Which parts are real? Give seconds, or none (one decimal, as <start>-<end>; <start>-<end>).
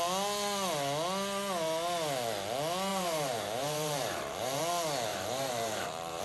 0.0-2.9; 4.6-5.1